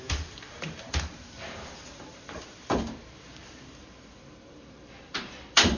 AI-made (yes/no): yes